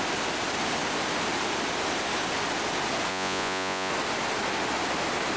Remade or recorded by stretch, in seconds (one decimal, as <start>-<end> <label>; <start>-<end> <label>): 0.0-3.1 recorded; 3.1-3.9 remade; 3.9-5.4 recorded